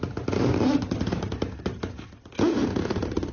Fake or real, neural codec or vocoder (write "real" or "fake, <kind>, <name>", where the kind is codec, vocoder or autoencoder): fake, vocoder, BigVGAN v2